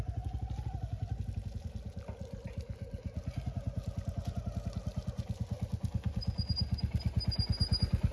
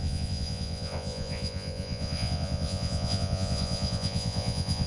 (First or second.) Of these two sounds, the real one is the first